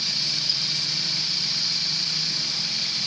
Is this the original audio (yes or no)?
yes